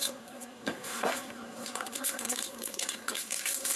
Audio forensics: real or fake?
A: fake